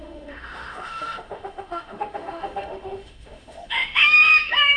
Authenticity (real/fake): fake